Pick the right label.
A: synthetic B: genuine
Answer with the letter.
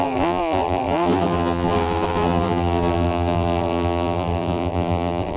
A